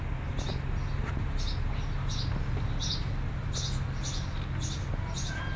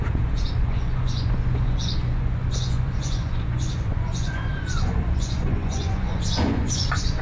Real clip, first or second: first